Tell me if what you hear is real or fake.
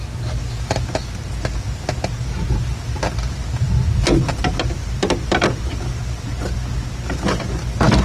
real